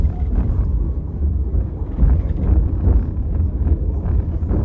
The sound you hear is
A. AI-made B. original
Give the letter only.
A